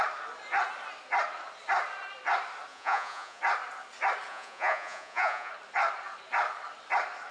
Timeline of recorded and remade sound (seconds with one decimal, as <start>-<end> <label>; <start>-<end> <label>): 0.0-2.7 recorded; 2.7-3.4 remade; 3.4-4.3 recorded; 4.3-5.5 remade; 5.5-7.3 recorded